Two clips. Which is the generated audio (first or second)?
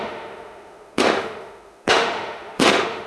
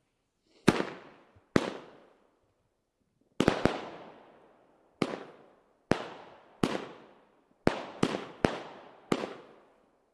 first